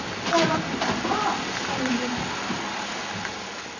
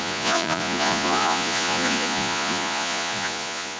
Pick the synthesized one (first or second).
second